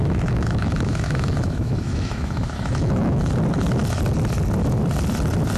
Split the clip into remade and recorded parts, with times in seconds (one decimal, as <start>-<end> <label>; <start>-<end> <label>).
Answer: 0.0-3.3 remade; 3.3-5.6 recorded

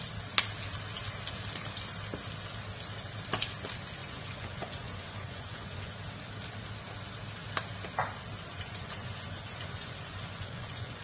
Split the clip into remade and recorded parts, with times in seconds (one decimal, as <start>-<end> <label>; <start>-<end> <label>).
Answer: 0.0-4.0 recorded; 4.0-5.9 remade; 5.9-8.5 recorded; 8.5-11.0 remade